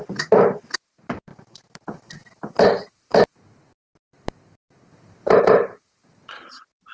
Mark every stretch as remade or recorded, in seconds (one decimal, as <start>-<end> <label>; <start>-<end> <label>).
0.0-6.9 recorded